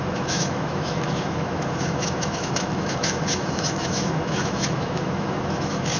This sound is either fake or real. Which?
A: fake